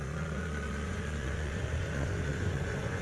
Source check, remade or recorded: remade